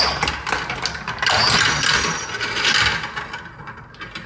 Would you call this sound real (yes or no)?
yes